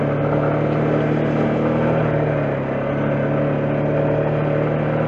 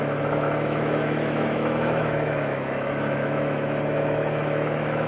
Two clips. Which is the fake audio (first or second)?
second